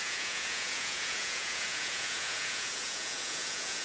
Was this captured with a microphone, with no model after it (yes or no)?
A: no